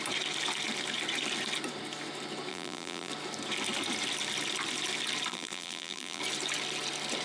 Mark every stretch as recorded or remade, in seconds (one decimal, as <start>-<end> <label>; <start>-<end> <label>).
0.0-2.5 recorded; 2.5-3.1 remade; 3.1-5.3 recorded; 5.3-6.2 remade; 6.2-7.2 recorded